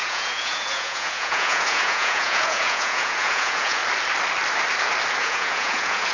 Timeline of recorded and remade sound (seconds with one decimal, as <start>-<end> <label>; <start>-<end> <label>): 0.0-3.8 remade; 3.8-5.2 recorded; 5.2-6.1 remade